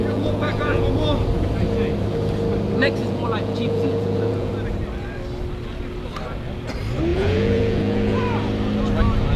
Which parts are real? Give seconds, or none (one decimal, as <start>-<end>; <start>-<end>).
1.0-3.0; 4.5-7.1; 8.2-9.4